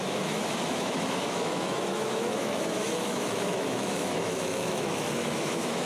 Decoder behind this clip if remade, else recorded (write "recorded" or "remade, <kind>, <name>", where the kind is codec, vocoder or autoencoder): remade, autoencoder, DAC-VAE